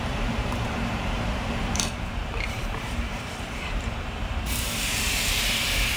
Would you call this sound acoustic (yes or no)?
no